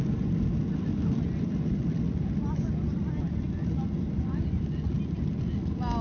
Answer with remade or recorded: recorded